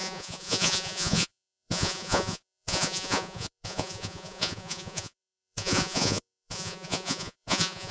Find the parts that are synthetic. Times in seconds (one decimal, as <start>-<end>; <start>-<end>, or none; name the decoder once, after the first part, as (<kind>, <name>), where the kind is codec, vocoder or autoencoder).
0.0-7.9 (vocoder, Vocos)